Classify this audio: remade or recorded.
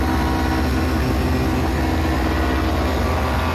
recorded